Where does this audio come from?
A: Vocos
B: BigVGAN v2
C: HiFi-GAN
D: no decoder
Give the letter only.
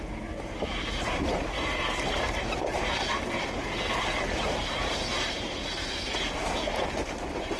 B